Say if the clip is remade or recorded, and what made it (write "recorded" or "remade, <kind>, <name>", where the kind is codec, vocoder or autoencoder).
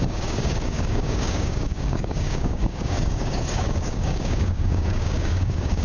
remade, codec, DAC